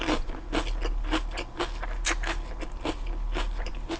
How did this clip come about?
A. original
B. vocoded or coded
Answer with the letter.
A